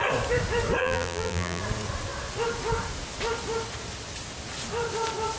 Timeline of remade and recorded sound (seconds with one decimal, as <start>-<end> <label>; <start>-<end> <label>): 0.0-0.8 recorded; 0.8-1.6 remade; 1.6-5.4 recorded